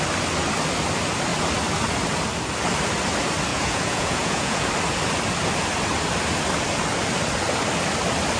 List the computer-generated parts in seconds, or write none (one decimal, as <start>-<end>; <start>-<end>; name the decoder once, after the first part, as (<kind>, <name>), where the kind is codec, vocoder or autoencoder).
3.5-4.7 (vocoder, Vocos)